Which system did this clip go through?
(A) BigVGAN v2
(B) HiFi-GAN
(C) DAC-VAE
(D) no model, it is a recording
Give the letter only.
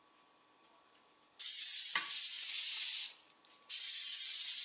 D